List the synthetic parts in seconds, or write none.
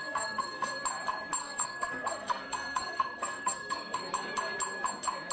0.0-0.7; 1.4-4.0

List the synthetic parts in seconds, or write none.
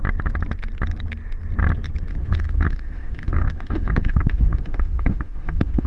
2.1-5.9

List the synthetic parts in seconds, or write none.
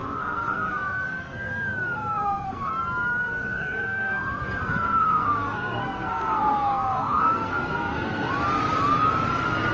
0.0-2.7; 3.2-8.3